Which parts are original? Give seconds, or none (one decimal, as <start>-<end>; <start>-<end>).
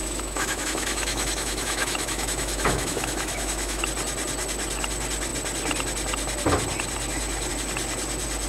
3.8-8.5